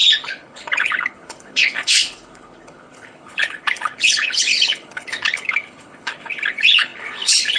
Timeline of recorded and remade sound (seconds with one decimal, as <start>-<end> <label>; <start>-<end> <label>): 0.0-7.6 remade